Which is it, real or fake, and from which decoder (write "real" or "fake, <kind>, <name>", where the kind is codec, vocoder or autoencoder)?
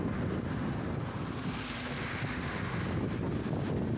real